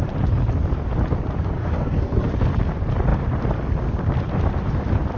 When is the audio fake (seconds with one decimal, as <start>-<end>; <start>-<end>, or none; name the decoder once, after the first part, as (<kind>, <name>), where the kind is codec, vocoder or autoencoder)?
1.6-2.3 (codec, SNAC)